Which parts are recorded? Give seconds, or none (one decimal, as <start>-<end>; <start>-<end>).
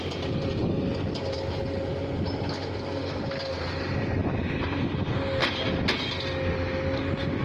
0.0-7.4